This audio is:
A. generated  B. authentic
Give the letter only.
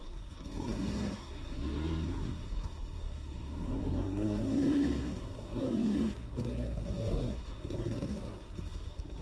A